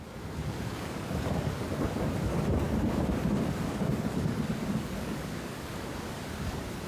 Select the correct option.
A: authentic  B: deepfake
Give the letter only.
B